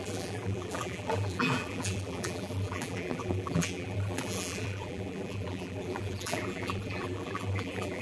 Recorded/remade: remade